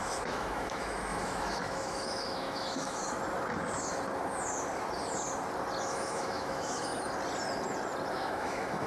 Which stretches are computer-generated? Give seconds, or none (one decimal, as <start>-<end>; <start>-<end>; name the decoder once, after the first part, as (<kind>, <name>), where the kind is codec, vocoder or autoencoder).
0.0-3.0 (autoencoder, DAC-VAE); 5.8-6.9; 8.1-8.9